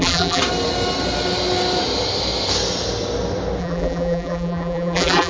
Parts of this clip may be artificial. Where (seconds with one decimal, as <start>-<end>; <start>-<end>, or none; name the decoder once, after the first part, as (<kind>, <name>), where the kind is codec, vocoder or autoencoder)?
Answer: 0.0-0.4 (vocoder, BigVGAN v2); 3.6-5.3